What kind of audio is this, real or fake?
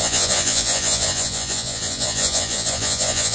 fake